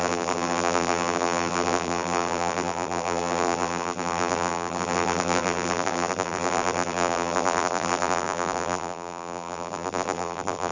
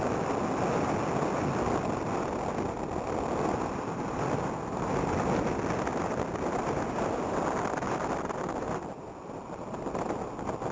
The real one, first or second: second